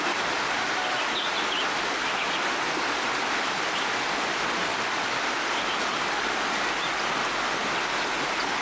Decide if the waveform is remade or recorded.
recorded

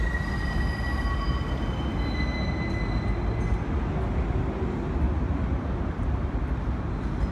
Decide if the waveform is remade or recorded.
recorded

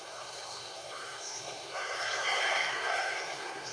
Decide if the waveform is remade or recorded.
remade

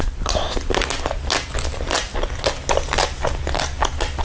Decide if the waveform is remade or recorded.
recorded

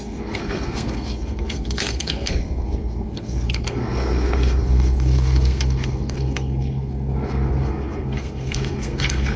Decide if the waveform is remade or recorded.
remade